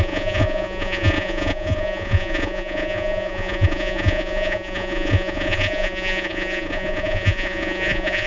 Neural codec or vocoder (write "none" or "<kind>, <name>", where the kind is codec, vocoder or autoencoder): vocoder, Vocos